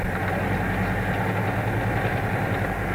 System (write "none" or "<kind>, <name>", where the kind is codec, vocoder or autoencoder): none